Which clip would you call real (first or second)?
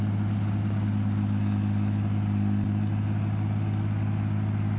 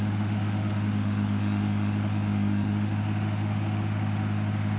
first